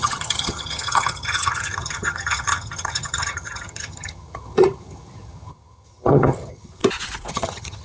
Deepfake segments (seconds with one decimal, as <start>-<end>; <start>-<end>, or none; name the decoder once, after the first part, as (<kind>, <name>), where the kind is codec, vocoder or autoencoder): 0.0-6.8 (vocoder, HiFi-GAN); 7.3-7.8